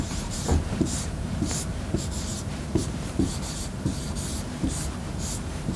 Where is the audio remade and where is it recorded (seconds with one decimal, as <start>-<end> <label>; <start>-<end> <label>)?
0.0-5.8 remade